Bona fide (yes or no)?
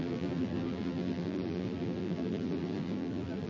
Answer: no